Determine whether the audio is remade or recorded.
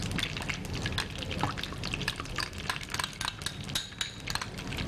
recorded